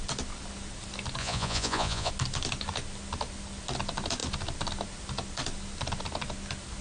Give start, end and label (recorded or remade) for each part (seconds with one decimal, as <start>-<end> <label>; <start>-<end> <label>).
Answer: 0.0-1.2 recorded; 1.2-2.1 remade; 2.1-6.8 recorded